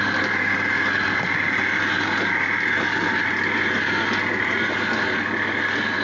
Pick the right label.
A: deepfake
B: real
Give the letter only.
B